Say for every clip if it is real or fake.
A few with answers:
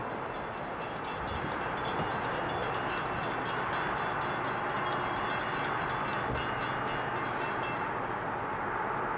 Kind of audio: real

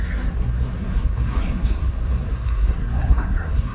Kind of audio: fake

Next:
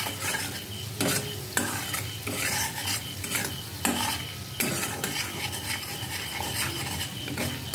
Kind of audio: real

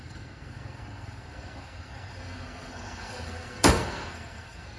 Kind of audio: fake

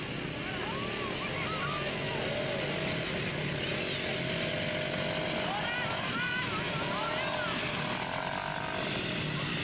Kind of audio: real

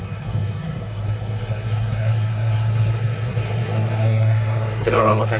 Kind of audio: fake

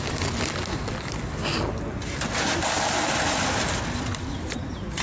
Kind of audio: real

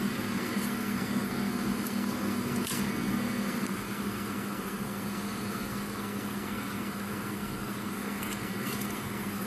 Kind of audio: fake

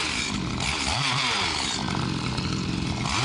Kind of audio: real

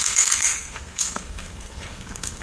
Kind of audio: fake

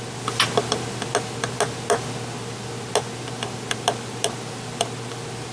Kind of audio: real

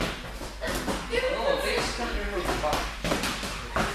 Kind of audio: real